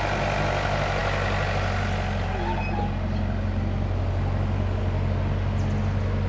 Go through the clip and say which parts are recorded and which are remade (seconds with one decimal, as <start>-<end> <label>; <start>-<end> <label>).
0.0-6.3 recorded